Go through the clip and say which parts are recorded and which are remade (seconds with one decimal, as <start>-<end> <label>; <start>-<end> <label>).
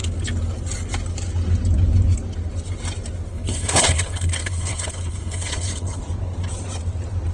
0.0-3.3 recorded; 3.3-6.0 remade; 6.0-7.3 recorded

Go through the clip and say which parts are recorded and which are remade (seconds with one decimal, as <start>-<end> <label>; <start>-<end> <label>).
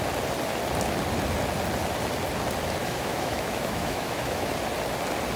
0.0-2.8 recorded; 2.8-4.5 remade; 4.5-5.4 recorded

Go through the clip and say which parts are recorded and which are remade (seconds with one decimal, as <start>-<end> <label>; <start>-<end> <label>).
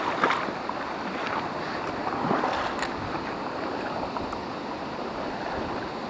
0.0-6.1 recorded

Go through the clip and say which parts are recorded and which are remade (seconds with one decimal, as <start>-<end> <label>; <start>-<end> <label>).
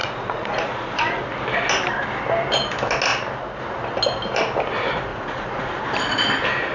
0.0-1.2 remade; 1.2-5.1 recorded; 5.1-5.8 remade; 5.8-6.7 recorded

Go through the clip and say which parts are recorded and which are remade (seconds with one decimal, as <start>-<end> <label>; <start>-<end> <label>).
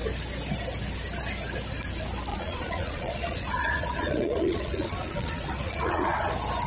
0.0-2.3 recorded; 2.3-6.3 remade; 6.3-6.7 recorded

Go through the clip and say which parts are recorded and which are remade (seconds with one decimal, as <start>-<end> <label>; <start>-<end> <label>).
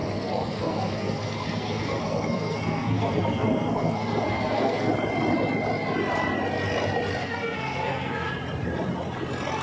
0.0-4.9 remade; 4.9-7.2 recorded; 7.2-8.3 remade; 8.3-9.6 recorded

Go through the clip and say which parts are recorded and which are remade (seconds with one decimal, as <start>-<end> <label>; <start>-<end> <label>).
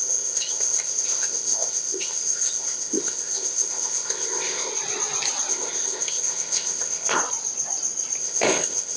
0.0-4.7 remade; 4.7-5.5 recorded; 5.5-7.2 remade; 7.2-8.2 recorded; 8.2-9.0 remade